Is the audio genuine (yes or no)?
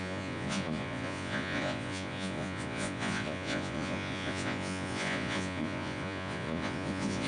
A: no